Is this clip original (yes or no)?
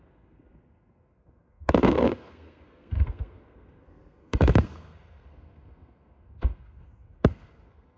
no